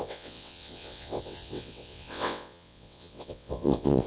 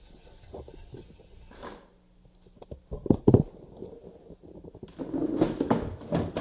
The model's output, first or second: first